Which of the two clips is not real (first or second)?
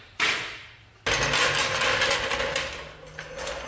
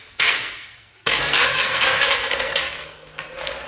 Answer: second